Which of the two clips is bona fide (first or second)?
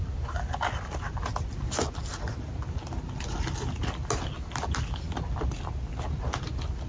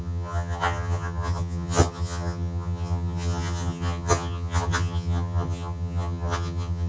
first